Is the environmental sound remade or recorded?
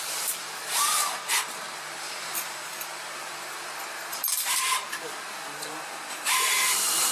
remade